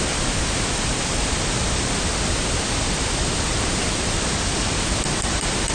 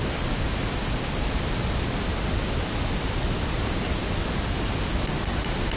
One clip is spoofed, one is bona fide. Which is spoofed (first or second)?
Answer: first